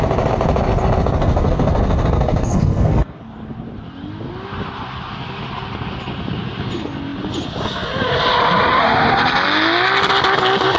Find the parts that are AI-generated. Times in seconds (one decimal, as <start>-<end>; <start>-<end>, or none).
1.2-3.2